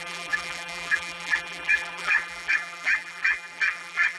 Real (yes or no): no